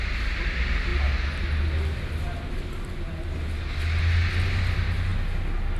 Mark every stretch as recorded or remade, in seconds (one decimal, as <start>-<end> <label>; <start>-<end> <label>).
0.0-5.8 recorded